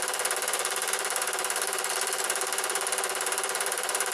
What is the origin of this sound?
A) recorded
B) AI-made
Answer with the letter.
B